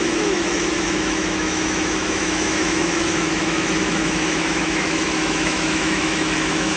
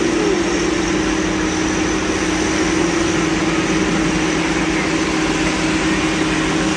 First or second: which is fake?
first